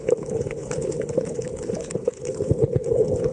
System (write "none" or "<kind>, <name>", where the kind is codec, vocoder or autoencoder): codec, HILCodec